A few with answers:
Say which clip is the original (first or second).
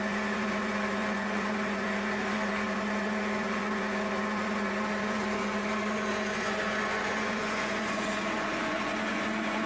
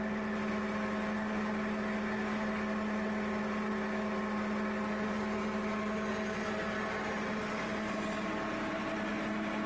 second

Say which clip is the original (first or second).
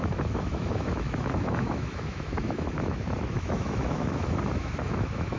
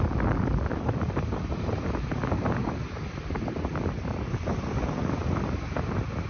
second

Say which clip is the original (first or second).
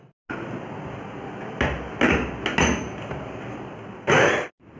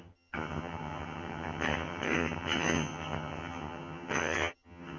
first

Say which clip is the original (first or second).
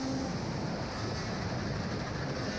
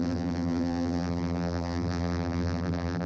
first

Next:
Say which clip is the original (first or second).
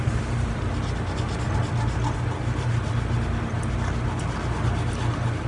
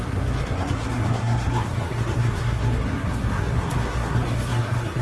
first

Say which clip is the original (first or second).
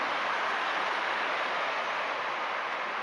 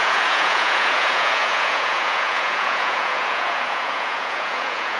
first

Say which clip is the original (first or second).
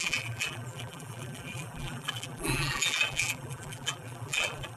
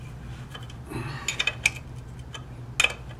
second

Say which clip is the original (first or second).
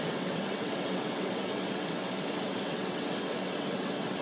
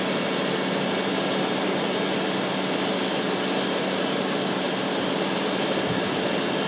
second